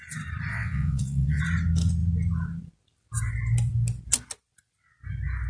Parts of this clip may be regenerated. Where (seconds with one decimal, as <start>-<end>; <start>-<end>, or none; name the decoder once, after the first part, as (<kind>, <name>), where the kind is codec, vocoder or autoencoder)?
0.5-1.4 (vocoder, WaveNeXt)